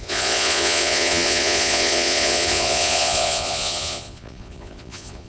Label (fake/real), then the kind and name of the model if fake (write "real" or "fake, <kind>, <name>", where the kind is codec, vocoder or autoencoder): fake, vocoder, Vocos